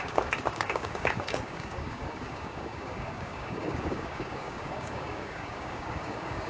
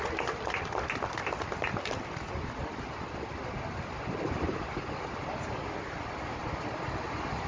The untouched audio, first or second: second